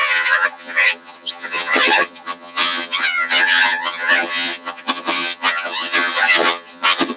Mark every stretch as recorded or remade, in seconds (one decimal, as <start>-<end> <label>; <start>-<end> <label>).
0.0-7.2 remade

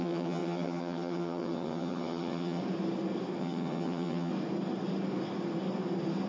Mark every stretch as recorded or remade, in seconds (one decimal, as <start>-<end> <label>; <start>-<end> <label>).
0.0-2.6 remade; 2.6-3.4 recorded; 3.4-4.3 remade; 4.3-6.3 recorded

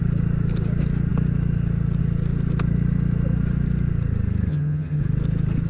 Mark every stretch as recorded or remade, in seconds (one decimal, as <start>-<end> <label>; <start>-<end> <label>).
0.0-4.5 recorded; 4.5-5.0 remade; 5.0-5.7 recorded

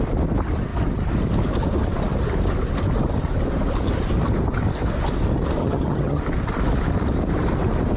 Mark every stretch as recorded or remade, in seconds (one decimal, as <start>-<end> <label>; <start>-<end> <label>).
0.0-5.6 recorded; 5.6-6.2 remade; 6.2-8.0 recorded

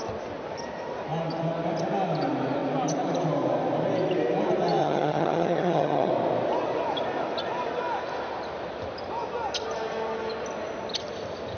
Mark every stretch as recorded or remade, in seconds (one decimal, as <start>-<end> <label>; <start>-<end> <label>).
0.0-4.8 recorded; 4.8-6.1 remade; 6.1-11.6 recorded

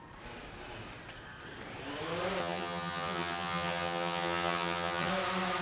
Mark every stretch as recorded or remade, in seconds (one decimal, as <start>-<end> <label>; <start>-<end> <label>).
0.0-2.4 recorded; 2.4-5.1 remade; 5.1-5.6 recorded

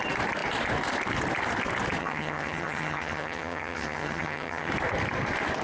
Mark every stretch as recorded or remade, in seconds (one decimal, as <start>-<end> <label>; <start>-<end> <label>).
0.0-2.0 recorded; 2.0-4.7 remade; 4.7-5.6 recorded